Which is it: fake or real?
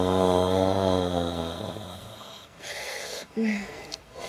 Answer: fake